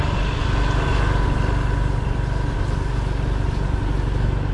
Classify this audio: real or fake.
real